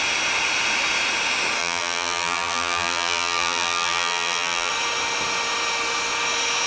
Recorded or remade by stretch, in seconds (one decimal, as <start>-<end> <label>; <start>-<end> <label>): 0.0-1.6 recorded; 1.6-4.7 remade; 4.7-6.7 recorded